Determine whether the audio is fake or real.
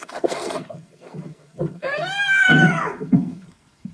fake